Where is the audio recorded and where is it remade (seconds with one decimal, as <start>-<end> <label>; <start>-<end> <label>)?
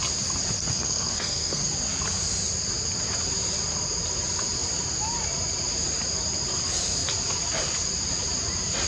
0.0-0.7 recorded; 0.7-1.7 remade; 1.7-8.9 recorded